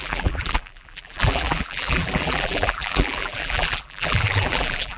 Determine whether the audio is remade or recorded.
remade